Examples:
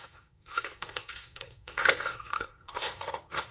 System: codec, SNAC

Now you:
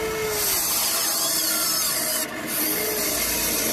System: none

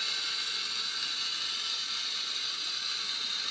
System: none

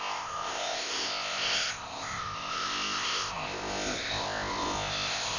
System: codec, ZipCodec